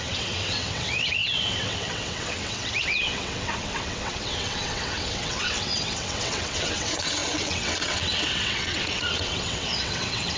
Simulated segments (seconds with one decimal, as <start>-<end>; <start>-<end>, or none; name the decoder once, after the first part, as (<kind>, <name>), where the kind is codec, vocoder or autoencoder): 0.0-10.4 (vocoder, WaveNeXt)